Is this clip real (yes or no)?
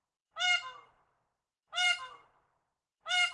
no